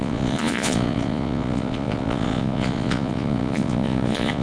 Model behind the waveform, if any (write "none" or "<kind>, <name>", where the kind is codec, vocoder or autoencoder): vocoder, Vocos